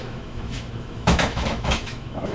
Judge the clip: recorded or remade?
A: remade